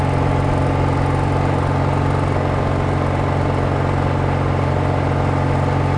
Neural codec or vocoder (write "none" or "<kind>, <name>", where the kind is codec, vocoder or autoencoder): none